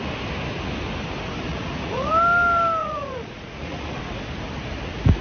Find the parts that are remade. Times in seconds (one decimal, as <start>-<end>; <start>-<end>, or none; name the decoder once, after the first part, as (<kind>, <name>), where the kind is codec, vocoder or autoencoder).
1.5-2.1 (vocoder, Vocos); 2.8-4.0